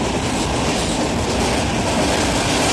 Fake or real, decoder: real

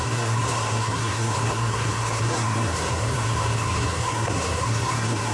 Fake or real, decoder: fake, codec, SNAC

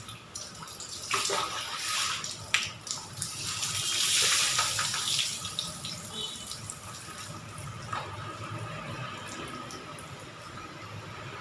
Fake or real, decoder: real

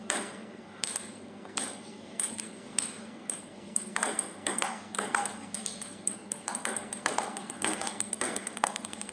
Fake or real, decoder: fake, codec, SNAC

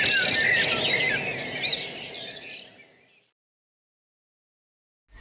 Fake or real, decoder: real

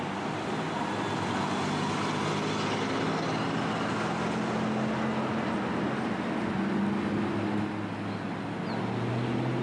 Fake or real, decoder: real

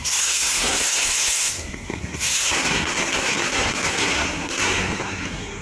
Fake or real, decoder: fake, codec, SNAC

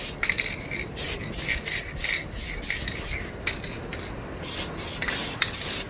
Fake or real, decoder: real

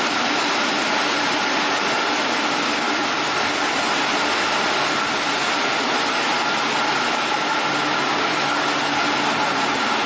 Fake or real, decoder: real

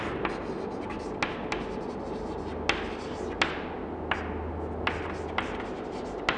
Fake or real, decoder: real